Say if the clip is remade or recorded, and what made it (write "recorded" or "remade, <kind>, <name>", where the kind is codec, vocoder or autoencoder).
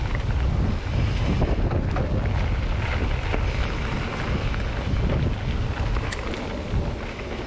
recorded